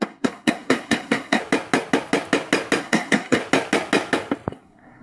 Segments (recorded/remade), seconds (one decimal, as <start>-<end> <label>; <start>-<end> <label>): 0.0-1.4 remade; 1.4-2.8 recorded; 2.8-3.4 remade; 3.4-4.5 recorded; 4.5-5.0 remade